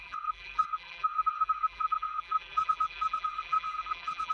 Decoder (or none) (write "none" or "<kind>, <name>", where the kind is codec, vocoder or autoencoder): vocoder, BigVGAN v2